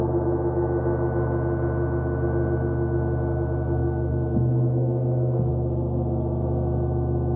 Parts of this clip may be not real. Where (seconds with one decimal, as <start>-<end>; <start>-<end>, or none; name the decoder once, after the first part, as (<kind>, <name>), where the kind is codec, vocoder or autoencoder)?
3.8-5.5 (codec, DAC)